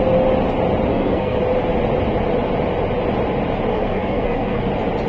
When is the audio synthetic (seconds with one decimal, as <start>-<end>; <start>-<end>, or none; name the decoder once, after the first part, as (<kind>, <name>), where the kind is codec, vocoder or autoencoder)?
0.9-1.4 (codec, SNAC); 3.7-4.6